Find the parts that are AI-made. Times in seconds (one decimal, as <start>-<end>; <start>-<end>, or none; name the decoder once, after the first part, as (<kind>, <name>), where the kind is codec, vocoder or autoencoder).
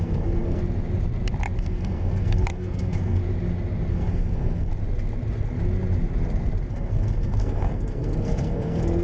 0.0-0.6 (codec, SNAC); 1.6-3.2; 3.9-4.7; 6.7-9.0